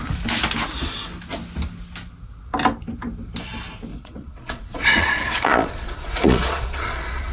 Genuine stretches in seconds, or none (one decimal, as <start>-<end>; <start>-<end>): 0.0-3.9

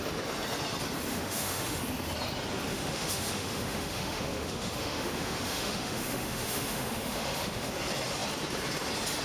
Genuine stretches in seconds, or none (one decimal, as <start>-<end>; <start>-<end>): 0.0-1.1; 1.8-2.7; 7.7-9.2

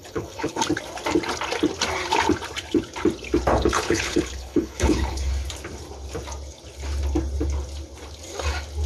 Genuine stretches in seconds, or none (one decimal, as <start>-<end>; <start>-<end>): 0.6-3.5; 5.3-8.9

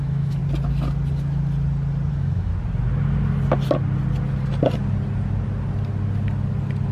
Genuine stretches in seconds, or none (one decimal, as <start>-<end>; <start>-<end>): 0.4-2.1; 2.5-6.9